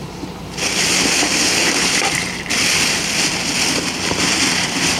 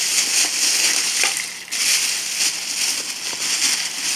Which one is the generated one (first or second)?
first